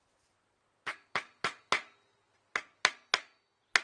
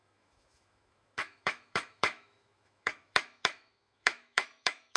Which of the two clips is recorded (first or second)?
first